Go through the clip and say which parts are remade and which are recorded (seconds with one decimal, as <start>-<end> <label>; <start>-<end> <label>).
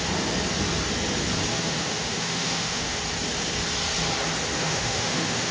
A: 0.0-1.5 recorded; 1.5-3.0 remade; 3.0-4.6 recorded; 4.6-5.5 remade